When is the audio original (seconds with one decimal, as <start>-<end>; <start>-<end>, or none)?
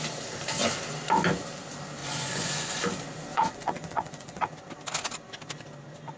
0.0-2.0; 2.8-3.3; 4.4-6.2